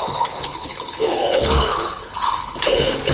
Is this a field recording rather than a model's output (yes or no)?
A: no